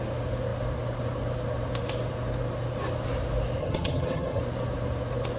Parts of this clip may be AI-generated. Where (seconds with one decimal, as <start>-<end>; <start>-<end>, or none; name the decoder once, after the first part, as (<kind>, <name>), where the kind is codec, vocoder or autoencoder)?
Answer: 3.6-4.4 (vocoder, HiFi-GAN)